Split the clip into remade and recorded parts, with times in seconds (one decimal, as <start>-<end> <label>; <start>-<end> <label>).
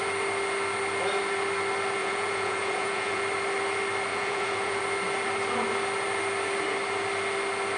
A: 0.0-2.0 recorded; 2.0-3.2 remade; 3.2-4.1 recorded; 4.1-4.8 remade; 4.8-7.8 recorded